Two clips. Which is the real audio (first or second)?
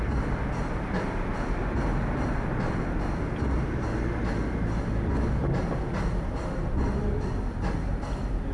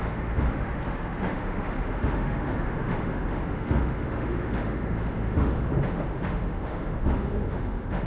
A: first